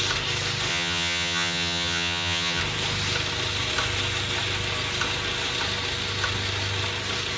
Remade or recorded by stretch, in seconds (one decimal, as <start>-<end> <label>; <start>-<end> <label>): 0.0-0.7 recorded; 0.7-2.6 remade; 2.6-7.4 recorded